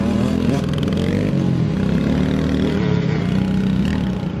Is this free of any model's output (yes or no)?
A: yes